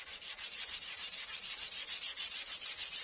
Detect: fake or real fake